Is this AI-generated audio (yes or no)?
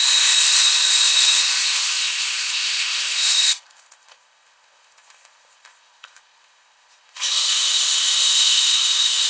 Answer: yes